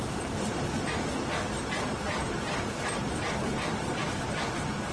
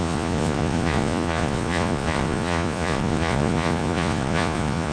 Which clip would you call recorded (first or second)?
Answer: first